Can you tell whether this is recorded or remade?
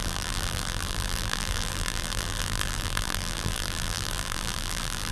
remade